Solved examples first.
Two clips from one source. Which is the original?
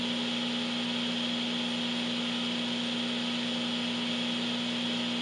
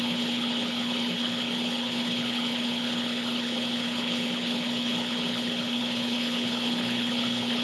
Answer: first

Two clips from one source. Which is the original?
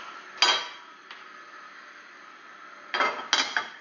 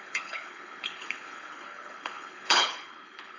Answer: first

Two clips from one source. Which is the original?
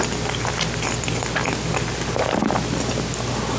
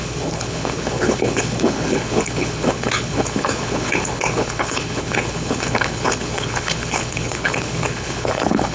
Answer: first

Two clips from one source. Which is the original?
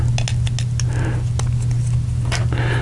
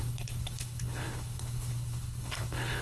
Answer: first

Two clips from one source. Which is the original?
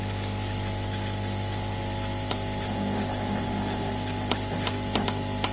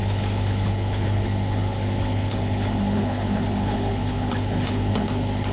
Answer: first